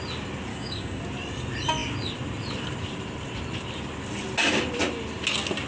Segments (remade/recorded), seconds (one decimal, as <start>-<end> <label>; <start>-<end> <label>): 0.0-0.5 recorded; 0.5-1.0 remade; 1.0-5.7 recorded